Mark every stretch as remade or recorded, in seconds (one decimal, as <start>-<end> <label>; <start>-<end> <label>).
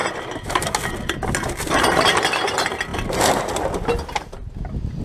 0.0-5.0 recorded